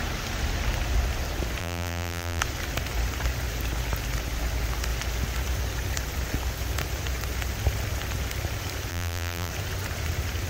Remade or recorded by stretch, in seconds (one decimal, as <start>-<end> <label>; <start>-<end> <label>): 0.0-1.6 recorded; 1.6-2.4 remade; 2.4-8.9 recorded; 8.9-9.5 remade; 9.5-10.5 recorded